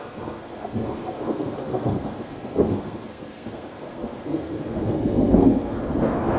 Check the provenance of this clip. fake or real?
fake